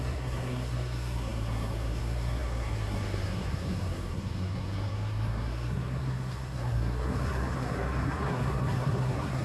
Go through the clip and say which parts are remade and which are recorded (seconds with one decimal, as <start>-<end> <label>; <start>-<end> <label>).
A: 0.0-9.4 remade